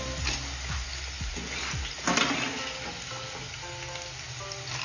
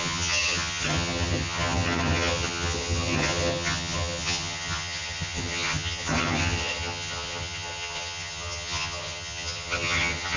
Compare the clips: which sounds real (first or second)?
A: first